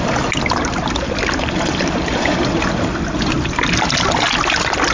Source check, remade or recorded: recorded